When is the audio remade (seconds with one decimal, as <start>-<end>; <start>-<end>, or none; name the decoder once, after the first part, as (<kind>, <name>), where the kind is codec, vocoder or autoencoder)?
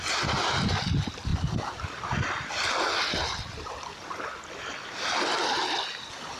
none